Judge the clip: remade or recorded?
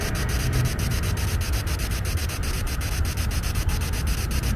recorded